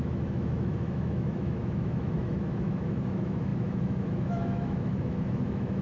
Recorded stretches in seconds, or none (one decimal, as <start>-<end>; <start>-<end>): none